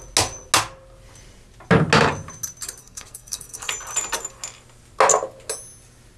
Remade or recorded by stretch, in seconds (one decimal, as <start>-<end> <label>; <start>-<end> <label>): 0.0-2.8 recorded; 2.8-3.7 remade; 3.7-6.2 recorded